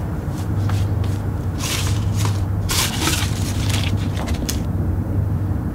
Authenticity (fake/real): fake